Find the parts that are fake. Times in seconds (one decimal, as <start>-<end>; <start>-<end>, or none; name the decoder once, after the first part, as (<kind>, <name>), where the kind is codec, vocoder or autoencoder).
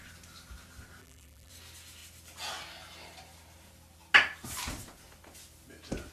1.0-1.5 (vocoder, BigVGAN v2)